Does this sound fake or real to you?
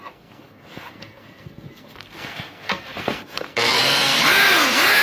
fake